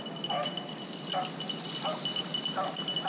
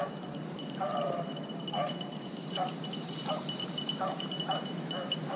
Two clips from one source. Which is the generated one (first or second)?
second